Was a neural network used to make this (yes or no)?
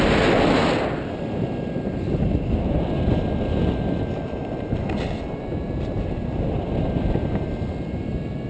no